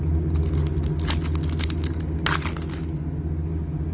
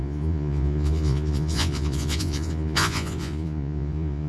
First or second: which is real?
first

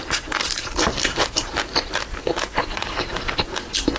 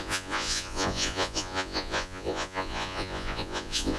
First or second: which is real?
first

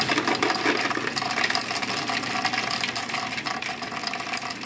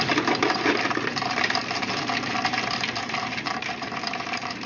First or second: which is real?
first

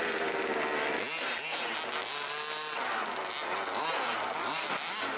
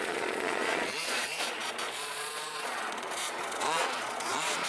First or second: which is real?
first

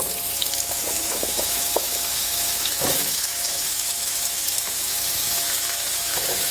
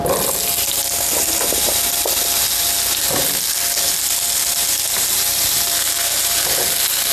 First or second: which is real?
second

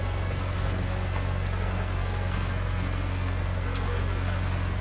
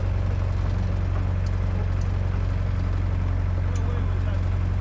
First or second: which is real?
second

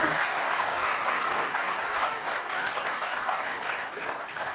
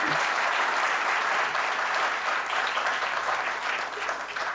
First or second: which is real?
second